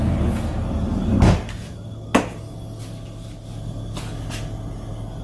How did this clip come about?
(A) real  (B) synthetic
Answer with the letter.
A